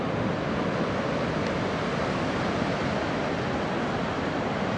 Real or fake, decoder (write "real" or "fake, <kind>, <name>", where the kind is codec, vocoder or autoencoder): real